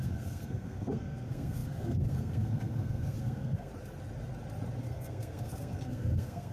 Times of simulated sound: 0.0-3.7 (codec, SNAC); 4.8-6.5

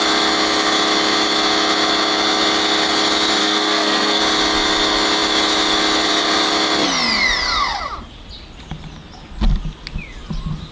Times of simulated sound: 3.4-4.2 (codec, SNAC)